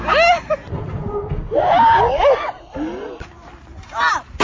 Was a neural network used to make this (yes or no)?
no